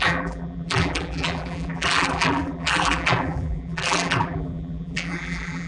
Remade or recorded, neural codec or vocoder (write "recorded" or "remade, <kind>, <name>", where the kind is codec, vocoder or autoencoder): remade, vocoder, BigVGAN v2